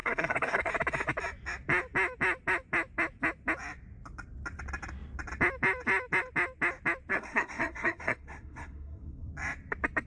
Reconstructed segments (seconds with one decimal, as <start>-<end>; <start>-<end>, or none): 0.0-0.7; 7.1-9.3